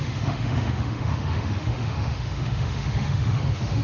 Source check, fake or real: fake